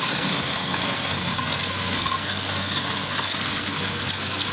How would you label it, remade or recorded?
remade